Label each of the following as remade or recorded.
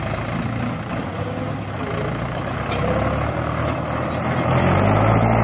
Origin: recorded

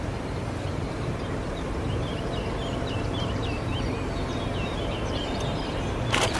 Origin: remade